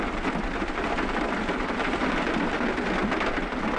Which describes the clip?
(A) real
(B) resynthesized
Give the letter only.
A